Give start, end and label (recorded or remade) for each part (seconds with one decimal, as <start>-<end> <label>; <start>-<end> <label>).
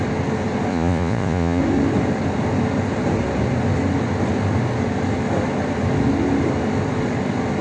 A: 0.0-0.7 recorded; 0.7-1.6 remade; 1.6-7.6 recorded